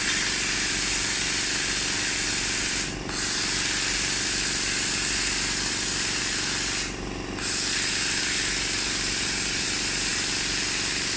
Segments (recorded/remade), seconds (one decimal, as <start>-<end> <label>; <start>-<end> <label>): 0.0-11.2 recorded

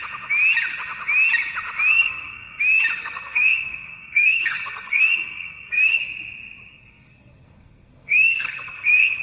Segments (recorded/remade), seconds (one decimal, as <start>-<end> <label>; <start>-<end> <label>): 0.0-1.9 recorded; 1.9-2.6 remade; 2.6-3.0 recorded; 3.0-6.0 remade; 6.0-6.7 recorded; 6.7-9.2 remade

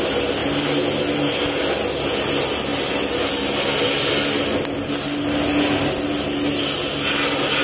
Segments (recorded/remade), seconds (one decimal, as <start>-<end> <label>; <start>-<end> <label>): 0.0-7.6 recorded

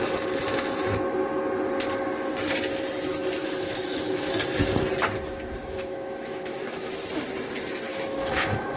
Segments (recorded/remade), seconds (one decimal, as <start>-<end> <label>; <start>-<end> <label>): 0.0-3.4 recorded; 3.4-4.4 remade; 4.4-5.6 recorded; 5.6-6.9 remade; 6.9-7.9 recorded; 7.9-8.8 remade

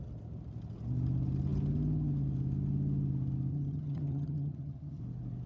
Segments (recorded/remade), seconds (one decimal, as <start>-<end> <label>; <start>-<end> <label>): 0.0-3.5 recorded; 3.5-5.0 remade; 5.0-5.5 recorded